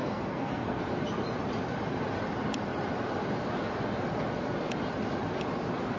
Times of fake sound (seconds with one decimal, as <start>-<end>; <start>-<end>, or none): 0.0-0.8

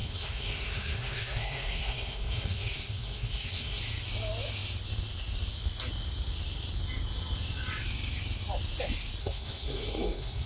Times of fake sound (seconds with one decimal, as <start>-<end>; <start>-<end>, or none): 0.0-3.8; 9.2-10.5

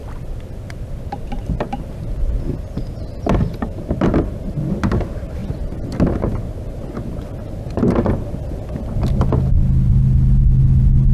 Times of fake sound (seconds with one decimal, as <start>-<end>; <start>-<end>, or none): none

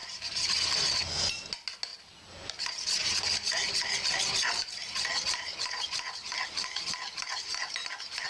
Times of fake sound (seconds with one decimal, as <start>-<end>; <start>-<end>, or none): 0.0-0.7; 1.9-2.5